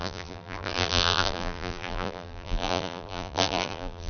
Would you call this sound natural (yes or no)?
no